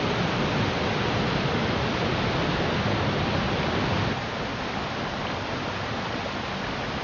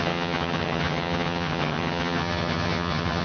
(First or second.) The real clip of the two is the first